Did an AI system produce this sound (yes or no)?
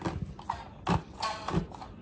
no